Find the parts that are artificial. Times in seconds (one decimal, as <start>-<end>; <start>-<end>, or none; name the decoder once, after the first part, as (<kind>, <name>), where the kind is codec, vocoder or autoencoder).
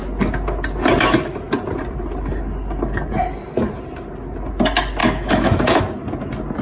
5.0-5.8 (autoencoder, DAC-VAE)